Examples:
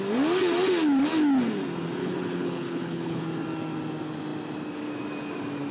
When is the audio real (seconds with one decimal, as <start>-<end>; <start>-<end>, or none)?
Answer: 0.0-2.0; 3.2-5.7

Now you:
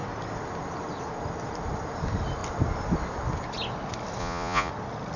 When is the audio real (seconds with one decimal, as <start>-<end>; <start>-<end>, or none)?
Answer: 0.0-4.2; 4.7-5.2

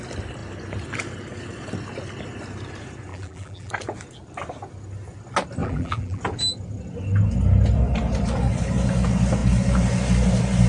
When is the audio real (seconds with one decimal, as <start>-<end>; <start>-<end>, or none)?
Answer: 0.0-3.1; 3.7-5.6; 6.2-10.7

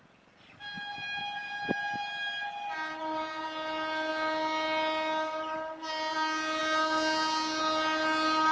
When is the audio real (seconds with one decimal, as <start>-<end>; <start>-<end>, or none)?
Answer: 0.0-8.5

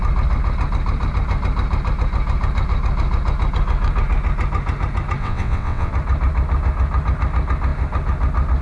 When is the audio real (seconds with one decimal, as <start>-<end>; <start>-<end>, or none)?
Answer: 0.0-5.2; 5.9-8.6

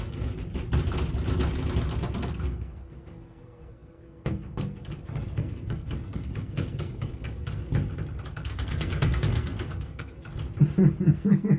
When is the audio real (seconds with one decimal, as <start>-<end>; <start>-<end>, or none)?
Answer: 0.4-2.2; 7.7-8.3; 10.3-11.0

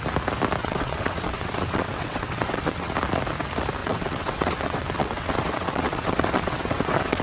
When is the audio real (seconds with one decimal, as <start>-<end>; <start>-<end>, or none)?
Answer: 0.0-0.6; 2.9-3.8